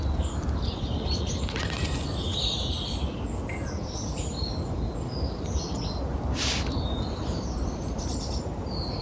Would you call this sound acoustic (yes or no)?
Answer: yes